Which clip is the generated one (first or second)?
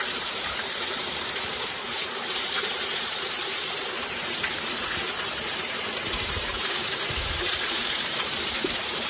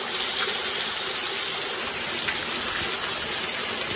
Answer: first